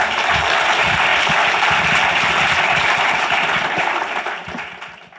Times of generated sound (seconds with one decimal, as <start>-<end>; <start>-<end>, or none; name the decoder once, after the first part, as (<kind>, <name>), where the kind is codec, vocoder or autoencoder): none